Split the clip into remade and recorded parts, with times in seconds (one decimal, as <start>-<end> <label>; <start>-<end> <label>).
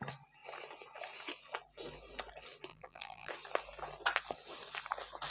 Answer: 0.0-2.7 recorded; 2.7-3.3 remade; 3.3-5.3 recorded